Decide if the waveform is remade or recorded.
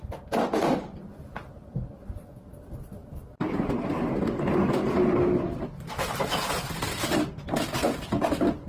recorded